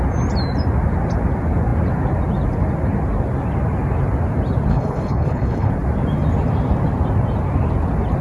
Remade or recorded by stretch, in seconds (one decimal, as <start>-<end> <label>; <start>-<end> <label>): 0.0-4.7 recorded; 4.7-5.7 remade; 5.7-8.2 recorded